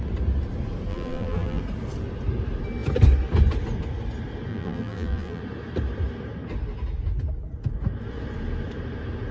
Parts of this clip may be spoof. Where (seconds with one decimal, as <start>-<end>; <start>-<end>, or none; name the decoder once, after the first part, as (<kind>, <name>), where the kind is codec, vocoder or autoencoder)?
0.9-1.6 (vocoder, BigVGAN v2); 4.5-5.4